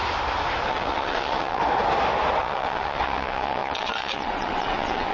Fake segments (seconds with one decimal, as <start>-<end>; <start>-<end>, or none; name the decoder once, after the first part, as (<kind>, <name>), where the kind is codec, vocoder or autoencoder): 0.7-1.6 (vocoder, WaveNeXt); 2.4-5.1

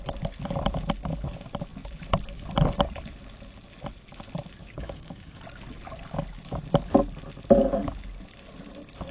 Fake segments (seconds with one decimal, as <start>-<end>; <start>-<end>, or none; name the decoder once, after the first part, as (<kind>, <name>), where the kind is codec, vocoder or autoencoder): 4.6-5.4 (codec, DAC)

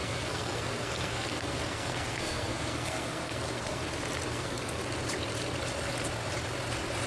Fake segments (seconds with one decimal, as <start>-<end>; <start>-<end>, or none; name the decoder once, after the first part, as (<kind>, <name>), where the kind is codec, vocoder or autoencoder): 0.0-3.8 (codec, SNAC); 4.3-4.8

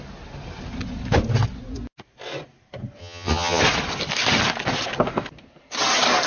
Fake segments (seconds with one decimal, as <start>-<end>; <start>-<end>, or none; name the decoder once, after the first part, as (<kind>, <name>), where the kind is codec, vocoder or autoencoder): 3.0-3.6 (vocoder, HiFi-GAN)

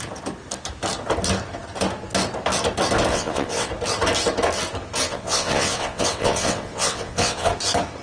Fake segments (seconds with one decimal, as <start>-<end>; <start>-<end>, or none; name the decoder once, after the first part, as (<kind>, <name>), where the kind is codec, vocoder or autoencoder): 3.1-3.7 (vocoder, WaveNeXt); 5.1-7.5